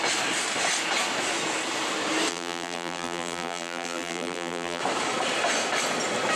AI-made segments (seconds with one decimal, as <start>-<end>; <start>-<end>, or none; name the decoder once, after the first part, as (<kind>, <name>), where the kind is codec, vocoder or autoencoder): 2.3-4.8 (vocoder, BigVGAN v2)